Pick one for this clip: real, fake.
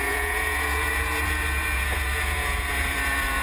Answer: fake